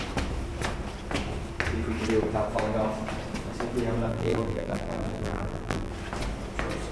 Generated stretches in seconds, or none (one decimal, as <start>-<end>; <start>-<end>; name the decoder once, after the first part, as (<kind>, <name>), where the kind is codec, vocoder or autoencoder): 4.1-5.9 (vocoder, BigVGAN v2)